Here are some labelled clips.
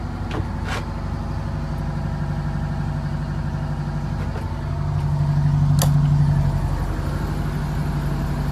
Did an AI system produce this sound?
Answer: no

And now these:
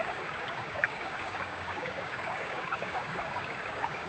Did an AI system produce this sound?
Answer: yes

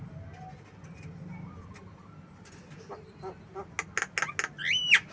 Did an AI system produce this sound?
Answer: no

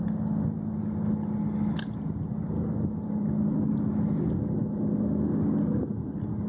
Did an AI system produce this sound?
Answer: no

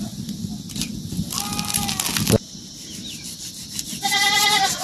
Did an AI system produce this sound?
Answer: no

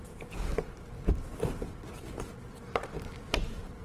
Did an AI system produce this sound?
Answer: no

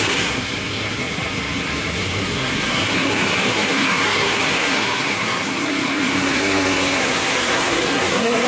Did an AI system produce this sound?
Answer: yes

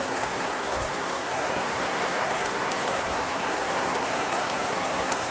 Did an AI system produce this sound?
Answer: yes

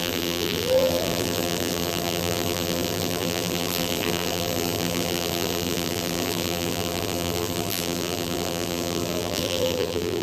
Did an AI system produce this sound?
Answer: yes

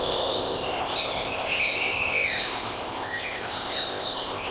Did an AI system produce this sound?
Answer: yes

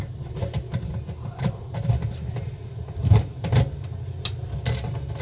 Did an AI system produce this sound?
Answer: no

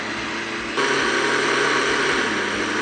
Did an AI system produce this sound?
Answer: no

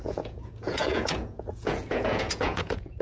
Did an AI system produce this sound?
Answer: yes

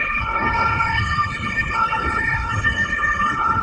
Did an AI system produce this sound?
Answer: yes